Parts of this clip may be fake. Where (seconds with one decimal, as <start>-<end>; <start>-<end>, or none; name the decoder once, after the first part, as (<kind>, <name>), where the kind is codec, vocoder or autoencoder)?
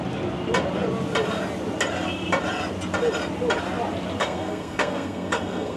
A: 4.2-5.8 (codec, SNAC)